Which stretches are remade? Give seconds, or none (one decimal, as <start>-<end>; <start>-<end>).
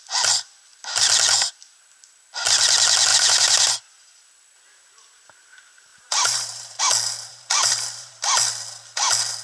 3.1-3.7; 5.9-6.8; 7.3-8.1